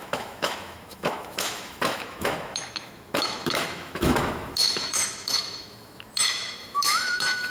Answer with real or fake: fake